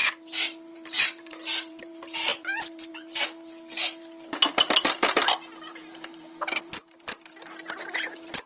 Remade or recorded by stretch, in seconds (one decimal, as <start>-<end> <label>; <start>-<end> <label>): 0.0-8.5 remade